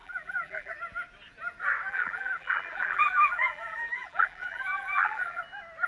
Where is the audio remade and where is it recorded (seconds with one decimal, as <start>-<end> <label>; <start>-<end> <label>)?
0.0-0.7 remade; 0.7-1.9 recorded; 1.9-5.4 remade; 5.4-5.9 recorded